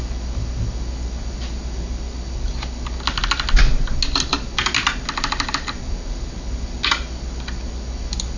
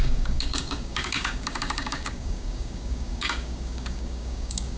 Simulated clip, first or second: second